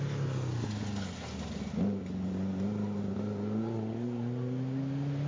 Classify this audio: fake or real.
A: real